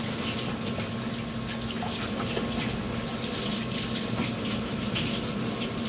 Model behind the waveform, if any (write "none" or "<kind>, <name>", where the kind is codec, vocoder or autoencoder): none